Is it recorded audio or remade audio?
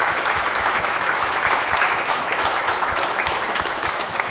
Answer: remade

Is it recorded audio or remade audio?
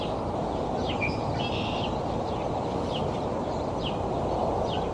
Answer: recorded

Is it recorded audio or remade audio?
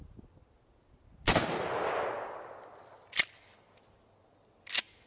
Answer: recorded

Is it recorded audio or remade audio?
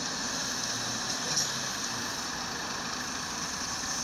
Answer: recorded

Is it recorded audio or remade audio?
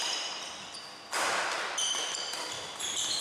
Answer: recorded